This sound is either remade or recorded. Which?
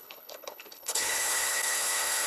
remade